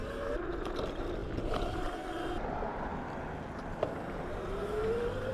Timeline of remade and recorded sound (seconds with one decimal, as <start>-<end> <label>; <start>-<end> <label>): 0.0-5.3 recorded